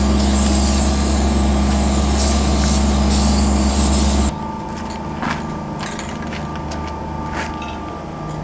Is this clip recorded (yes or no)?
yes